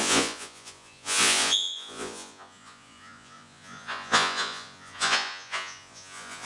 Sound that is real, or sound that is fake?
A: fake